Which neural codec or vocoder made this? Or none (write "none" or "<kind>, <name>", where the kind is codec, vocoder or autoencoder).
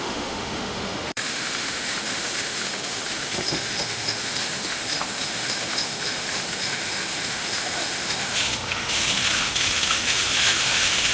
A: autoencoder, DAC-VAE